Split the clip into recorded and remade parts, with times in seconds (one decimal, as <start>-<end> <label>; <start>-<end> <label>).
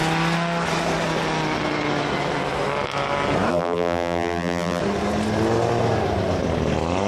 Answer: 0.0-3.5 recorded; 3.5-4.8 remade; 4.8-7.1 recorded